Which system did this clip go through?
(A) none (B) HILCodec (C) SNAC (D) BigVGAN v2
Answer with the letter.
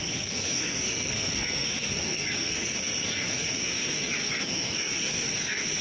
C